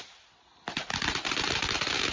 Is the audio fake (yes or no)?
no